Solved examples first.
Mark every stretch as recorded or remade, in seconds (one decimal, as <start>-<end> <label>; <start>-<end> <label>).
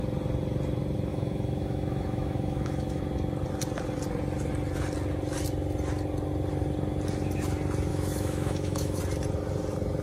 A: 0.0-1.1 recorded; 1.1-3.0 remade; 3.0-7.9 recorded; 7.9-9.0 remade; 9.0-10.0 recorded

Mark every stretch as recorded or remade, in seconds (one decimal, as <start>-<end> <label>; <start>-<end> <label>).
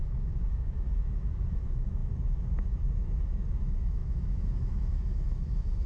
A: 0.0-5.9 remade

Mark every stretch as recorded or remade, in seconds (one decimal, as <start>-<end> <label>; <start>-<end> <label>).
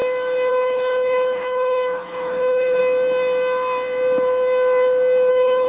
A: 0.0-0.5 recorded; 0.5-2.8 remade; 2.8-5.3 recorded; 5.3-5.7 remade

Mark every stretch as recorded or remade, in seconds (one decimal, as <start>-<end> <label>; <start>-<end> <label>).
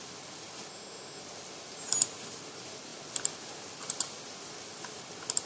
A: 0.0-0.7 recorded; 0.7-1.2 remade; 1.2-5.5 recorded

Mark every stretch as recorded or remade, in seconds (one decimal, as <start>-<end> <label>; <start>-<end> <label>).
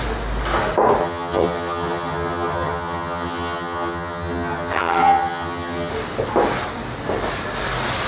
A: 0.0-1.0 recorded; 1.0-5.9 remade; 5.9-8.1 recorded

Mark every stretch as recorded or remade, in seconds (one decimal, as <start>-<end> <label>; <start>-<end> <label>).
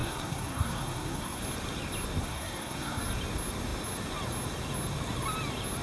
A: 0.0-1.4 remade; 1.4-2.2 recorded; 2.2-3.0 remade; 3.0-5.8 recorded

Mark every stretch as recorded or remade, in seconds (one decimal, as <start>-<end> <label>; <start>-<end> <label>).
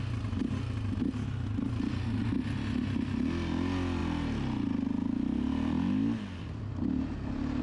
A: 0.0-7.6 recorded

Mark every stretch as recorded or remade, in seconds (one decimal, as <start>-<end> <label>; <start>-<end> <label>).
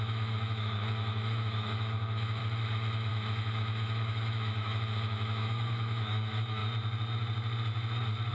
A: 0.0-2.4 remade; 2.4-3.1 recorded; 3.1-6.6 remade; 6.6-8.3 recorded